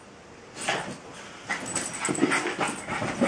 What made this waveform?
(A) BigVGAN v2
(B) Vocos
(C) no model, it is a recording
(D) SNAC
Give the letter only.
C